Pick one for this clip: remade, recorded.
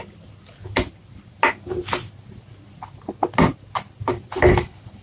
recorded